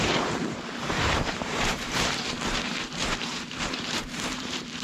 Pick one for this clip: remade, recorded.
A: remade